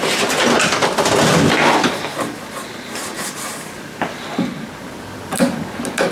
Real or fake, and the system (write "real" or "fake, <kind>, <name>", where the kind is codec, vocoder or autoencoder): real